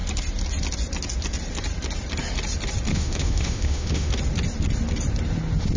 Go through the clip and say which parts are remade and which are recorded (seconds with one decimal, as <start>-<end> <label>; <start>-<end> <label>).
0.0-2.9 recorded; 2.9-4.1 remade; 4.1-5.8 recorded